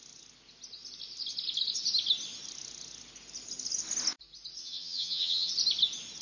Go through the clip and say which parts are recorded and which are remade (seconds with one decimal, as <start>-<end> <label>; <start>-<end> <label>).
0.0-4.6 recorded; 4.6-5.5 remade; 5.5-6.2 recorded